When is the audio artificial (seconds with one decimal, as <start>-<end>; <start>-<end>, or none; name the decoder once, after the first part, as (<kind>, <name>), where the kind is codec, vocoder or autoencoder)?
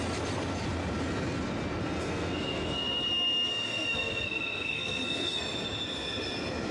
1.8-5.4 (codec, SNAC)